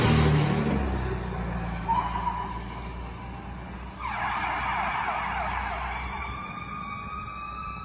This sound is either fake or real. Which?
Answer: real